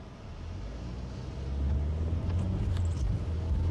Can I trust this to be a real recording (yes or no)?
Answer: yes